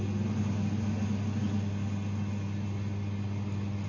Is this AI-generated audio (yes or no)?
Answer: no